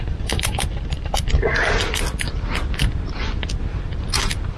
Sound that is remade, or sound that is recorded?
recorded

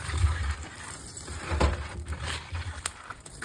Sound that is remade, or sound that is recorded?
recorded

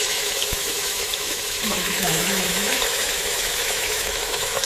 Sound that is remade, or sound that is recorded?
remade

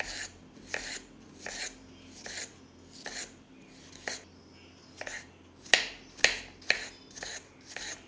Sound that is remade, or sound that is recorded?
recorded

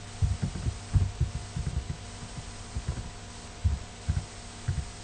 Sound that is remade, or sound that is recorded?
recorded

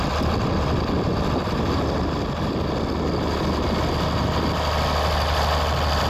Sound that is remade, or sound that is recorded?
recorded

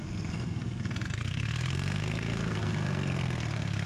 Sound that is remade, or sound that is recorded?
remade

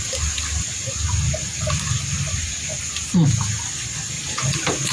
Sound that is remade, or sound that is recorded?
recorded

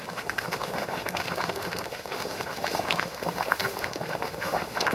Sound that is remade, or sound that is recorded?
remade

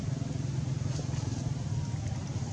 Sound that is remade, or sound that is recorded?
recorded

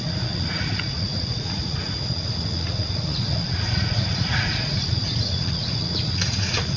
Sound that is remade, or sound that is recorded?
remade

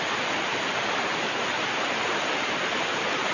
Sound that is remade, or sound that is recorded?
recorded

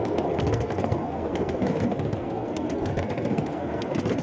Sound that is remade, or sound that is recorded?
remade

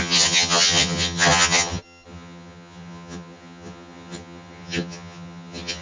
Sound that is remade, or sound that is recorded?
remade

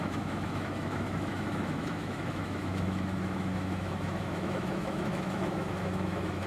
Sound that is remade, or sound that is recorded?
remade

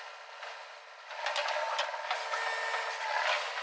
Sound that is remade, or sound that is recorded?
recorded